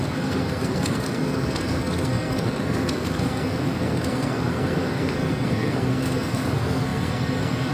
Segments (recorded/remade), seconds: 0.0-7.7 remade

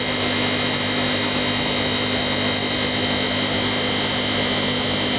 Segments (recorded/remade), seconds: 0.0-5.2 recorded

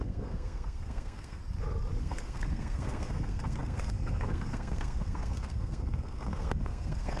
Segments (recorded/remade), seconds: 0.0-1.4 remade; 1.4-2.0 recorded; 2.0-7.2 remade

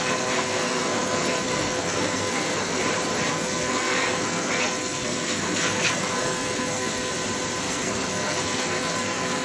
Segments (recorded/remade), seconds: 0.0-2.8 remade; 2.8-3.3 recorded; 3.3-7.1 remade; 7.1-7.6 recorded; 7.6-9.4 remade

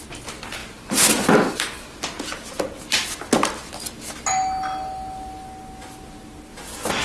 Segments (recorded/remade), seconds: 0.0-7.0 recorded

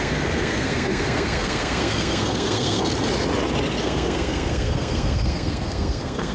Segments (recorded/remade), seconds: 0.0-2.9 remade; 2.9-3.8 recorded; 3.8-6.3 remade

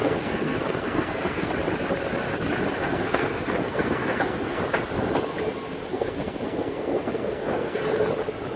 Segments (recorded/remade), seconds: 0.0-1.5 remade; 1.5-2.8 recorded; 2.8-4.6 remade; 4.6-5.9 recorded; 5.9-7.8 remade; 7.8-8.6 recorded